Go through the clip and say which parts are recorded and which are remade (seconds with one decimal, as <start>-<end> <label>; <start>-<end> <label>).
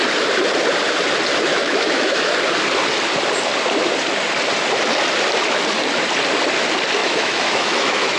0.0-1.5 recorded; 1.5-2.3 remade; 2.3-7.0 recorded; 7.0-8.2 remade